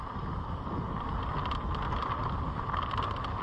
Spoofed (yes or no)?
no